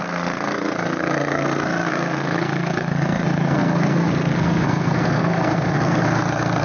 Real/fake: fake